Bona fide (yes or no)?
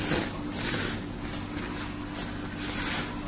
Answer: yes